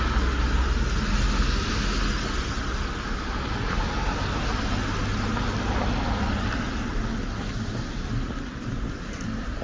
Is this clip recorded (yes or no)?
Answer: yes